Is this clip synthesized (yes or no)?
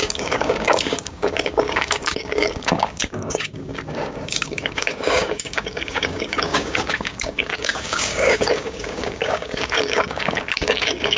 yes